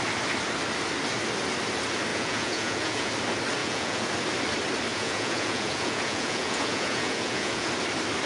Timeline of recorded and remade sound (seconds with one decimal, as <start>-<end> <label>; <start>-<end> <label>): 0.0-2.1 recorded; 2.1-3.1 remade; 3.1-3.6 recorded; 3.6-4.1 remade; 4.1-4.9 recorded; 4.9-7.7 remade; 7.7-8.3 recorded